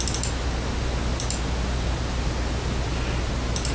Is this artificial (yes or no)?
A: no